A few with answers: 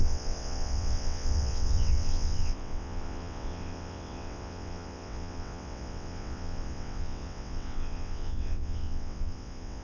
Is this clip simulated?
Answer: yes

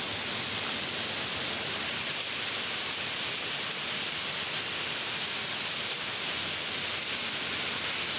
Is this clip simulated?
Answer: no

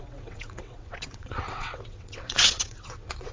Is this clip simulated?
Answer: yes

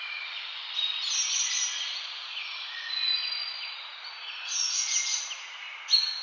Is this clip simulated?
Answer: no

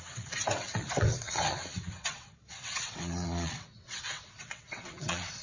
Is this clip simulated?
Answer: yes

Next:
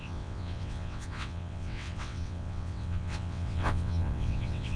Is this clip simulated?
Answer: yes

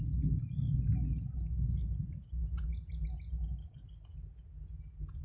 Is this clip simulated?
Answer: no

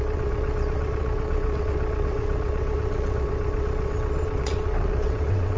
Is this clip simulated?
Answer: yes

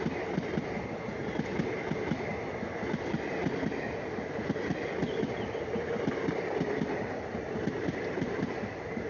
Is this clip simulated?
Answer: no